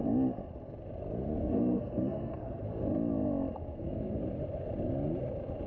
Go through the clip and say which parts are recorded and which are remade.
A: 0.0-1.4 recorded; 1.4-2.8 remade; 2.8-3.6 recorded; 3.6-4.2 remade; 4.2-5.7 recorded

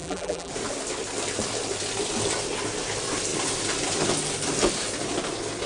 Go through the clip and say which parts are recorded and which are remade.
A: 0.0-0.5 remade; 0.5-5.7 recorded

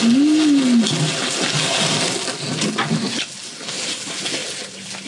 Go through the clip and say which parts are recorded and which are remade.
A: 0.0-5.1 recorded

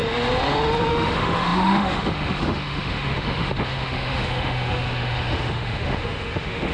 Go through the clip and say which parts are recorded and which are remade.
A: 0.0-0.9 recorded; 0.9-6.7 remade